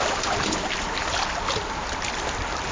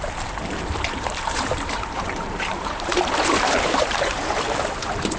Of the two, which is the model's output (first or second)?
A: second